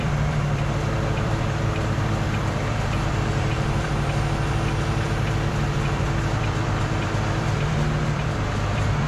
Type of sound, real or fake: fake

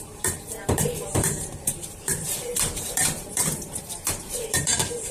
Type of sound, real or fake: fake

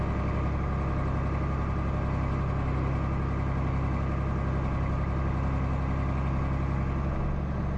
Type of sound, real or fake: real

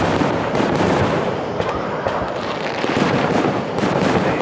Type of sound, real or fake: fake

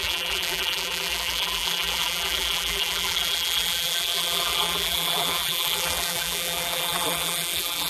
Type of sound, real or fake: fake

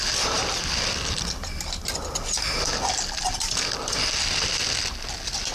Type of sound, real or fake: real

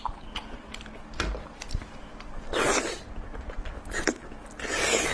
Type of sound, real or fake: real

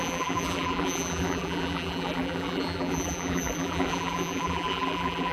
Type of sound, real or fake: fake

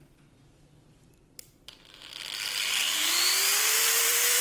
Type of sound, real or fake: fake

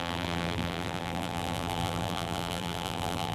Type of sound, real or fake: fake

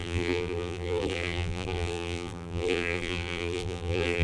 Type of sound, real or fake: fake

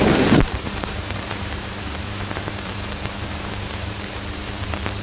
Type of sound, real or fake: fake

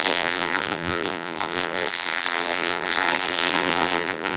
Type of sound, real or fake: fake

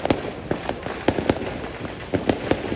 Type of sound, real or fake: real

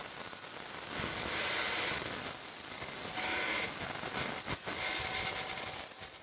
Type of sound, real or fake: real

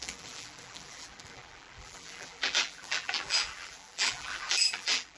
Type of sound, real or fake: fake